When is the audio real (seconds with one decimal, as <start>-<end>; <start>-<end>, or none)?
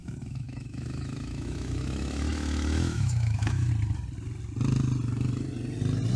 3.7-6.2